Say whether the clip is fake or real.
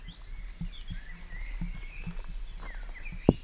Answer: real